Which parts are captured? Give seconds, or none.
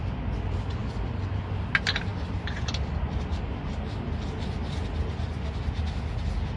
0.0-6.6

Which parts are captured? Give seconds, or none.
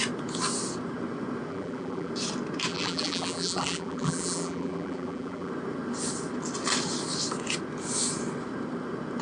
0.0-1.5; 2.1-2.7; 5.5-9.2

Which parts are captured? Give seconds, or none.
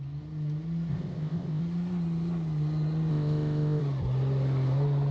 0.0-0.9; 1.6-3.1; 3.8-5.1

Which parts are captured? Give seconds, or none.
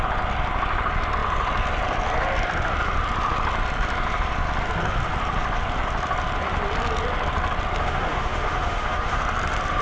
0.0-7.8; 9.2-9.8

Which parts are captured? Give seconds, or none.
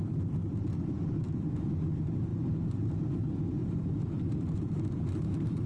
0.0-2.3; 3.1-3.6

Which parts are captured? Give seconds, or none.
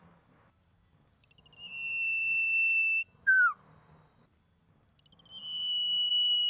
0.0-6.5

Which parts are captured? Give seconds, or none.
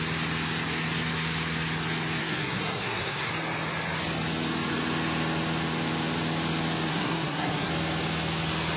0.0-2.2; 3.3-6.9; 7.7-8.8